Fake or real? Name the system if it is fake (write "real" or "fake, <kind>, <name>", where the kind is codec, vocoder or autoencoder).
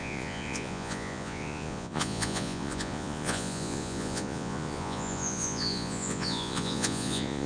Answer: fake, vocoder, Vocos